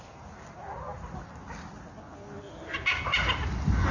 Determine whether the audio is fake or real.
real